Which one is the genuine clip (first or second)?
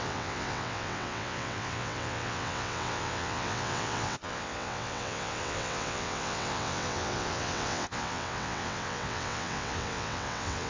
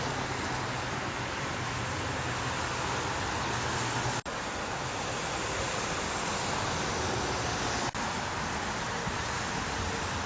second